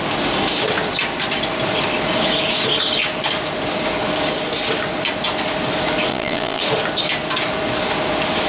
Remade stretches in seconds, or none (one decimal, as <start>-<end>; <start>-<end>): 6.1-6.6